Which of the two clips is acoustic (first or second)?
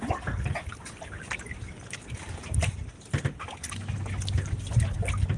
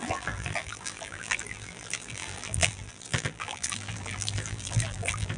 first